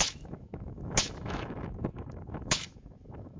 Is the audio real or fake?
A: fake